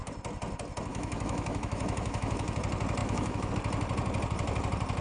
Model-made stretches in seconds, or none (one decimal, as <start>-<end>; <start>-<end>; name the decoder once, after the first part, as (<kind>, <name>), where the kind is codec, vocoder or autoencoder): 0.9-2.6 (autoencoder, DAC-VAE); 3.0-3.5